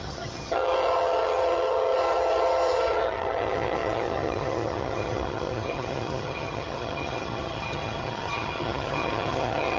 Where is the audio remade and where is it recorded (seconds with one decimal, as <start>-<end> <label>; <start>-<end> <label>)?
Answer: 0.0-9.8 remade